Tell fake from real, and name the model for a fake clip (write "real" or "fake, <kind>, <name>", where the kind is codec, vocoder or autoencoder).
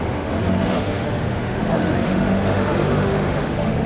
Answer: fake, autoencoder, DAC-VAE